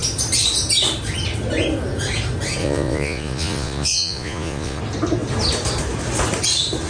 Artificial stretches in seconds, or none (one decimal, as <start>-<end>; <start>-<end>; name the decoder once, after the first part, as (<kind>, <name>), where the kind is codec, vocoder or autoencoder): 2.6-4.8 (vocoder, Vocos)